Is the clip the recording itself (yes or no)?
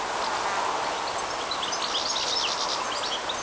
yes